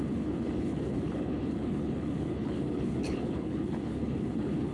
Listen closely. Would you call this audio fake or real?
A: fake